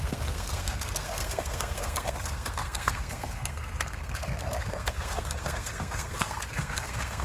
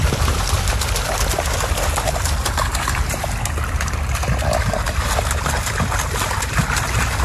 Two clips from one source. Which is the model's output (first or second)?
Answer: first